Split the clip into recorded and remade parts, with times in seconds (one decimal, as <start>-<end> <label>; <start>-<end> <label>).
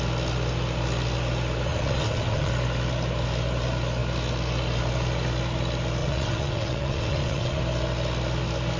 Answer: 0.0-1.7 recorded; 1.7-2.5 remade; 2.5-6.0 recorded; 6.0-7.6 remade; 7.6-8.8 recorded